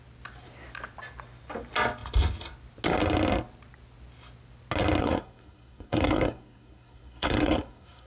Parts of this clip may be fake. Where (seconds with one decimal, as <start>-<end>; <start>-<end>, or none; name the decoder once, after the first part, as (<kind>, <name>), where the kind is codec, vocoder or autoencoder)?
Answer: 5.0-8.1 (codec, SNAC)